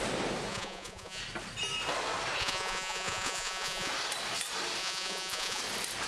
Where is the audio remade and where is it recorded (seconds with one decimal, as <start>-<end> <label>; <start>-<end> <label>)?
0.0-0.5 recorded; 0.5-1.2 remade; 1.2-2.4 recorded; 2.4-3.9 remade; 3.9-4.8 recorded; 4.8-5.6 remade; 5.6-6.1 recorded